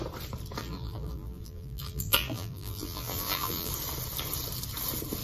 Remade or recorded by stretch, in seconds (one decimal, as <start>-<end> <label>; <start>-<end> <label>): 0.0-0.6 recorded; 0.6-3.7 remade; 3.7-5.2 recorded

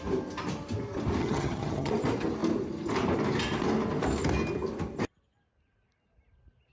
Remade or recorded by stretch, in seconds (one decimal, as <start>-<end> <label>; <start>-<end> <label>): 0.0-1.2 recorded; 1.2-1.9 remade; 1.9-6.7 recorded

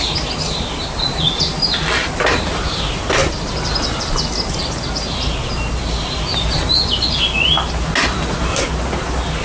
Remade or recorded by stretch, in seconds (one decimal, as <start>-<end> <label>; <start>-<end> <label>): 0.0-9.4 recorded

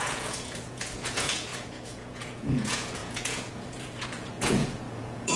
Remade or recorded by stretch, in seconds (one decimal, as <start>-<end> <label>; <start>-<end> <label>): 0.0-5.4 remade

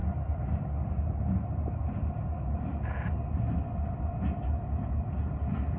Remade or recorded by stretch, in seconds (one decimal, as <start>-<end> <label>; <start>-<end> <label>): 0.0-5.8 recorded

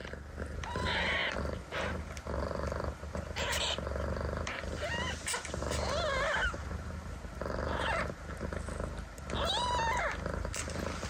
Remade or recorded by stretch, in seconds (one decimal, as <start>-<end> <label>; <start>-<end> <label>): 0.0-11.1 recorded

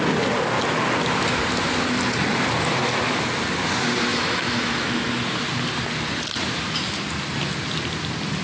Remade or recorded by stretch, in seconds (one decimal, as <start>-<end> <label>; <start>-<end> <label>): 0.0-4.1 recorded; 4.1-5.1 remade; 5.1-8.4 recorded

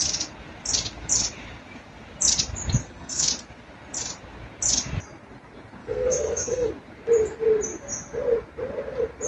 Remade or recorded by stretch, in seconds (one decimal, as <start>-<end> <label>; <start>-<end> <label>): 0.0-2.8 recorded; 2.8-3.3 remade; 3.3-5.8 recorded; 5.8-6.7 remade; 6.7-9.3 recorded